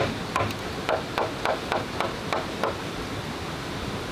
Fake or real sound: real